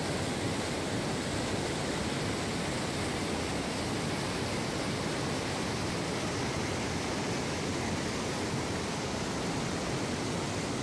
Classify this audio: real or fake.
real